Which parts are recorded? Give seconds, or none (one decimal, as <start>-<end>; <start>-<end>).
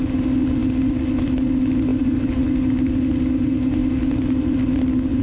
0.0-5.2